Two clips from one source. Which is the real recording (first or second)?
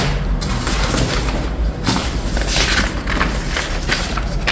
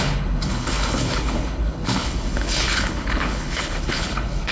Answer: first